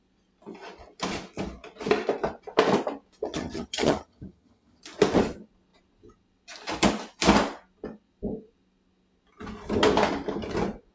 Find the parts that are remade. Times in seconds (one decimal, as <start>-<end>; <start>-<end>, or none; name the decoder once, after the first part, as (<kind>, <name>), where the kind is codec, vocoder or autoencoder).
3.2-4.8 (vocoder, HiFi-GAN)